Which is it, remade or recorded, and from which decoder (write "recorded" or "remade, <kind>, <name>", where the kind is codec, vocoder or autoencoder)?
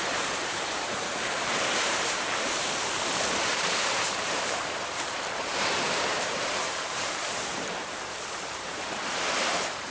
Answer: remade, vocoder, BigVGAN v2